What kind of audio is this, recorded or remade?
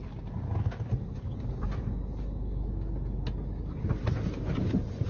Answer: recorded